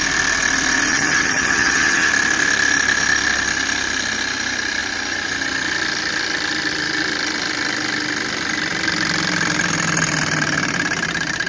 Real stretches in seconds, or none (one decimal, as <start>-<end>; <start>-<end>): 0.0-0.9; 2.1-11.5